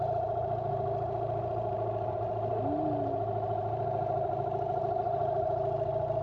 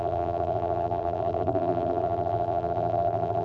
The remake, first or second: second